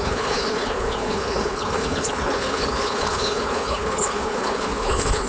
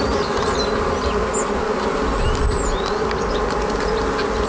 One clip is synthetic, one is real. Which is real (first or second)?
second